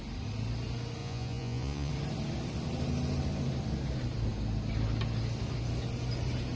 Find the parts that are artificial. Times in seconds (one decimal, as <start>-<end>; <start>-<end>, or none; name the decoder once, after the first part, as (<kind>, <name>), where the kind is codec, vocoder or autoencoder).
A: 1.0-1.9 (vocoder, Vocos)